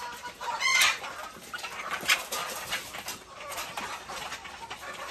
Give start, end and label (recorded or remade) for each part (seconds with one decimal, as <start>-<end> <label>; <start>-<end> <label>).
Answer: 0.0-5.1 recorded